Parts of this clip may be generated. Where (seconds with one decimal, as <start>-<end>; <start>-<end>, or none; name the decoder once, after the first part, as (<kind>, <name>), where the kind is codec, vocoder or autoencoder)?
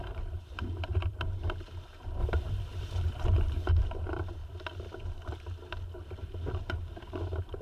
0.0-4.4 (vocoder, BigVGAN v2); 6.0-7.6